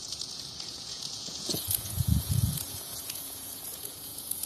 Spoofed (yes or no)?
yes